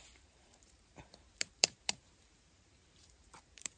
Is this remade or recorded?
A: remade